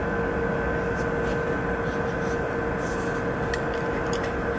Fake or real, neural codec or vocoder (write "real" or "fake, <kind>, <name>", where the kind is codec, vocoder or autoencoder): real